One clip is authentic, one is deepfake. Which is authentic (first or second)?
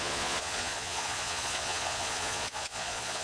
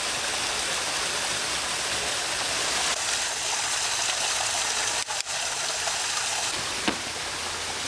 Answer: second